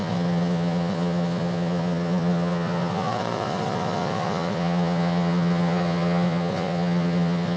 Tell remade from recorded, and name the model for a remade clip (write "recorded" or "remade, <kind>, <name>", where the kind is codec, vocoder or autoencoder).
remade, vocoder, Vocos